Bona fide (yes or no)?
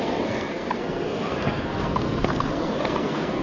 no